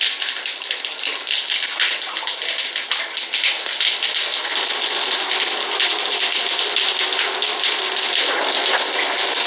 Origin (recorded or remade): recorded